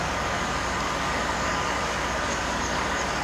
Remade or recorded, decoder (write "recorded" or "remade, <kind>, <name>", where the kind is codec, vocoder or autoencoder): remade, codec, DAC